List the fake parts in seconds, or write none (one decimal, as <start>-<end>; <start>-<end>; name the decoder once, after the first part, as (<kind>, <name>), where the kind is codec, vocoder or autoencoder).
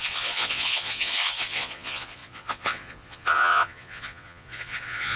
0.0-5.2 (vocoder, Vocos)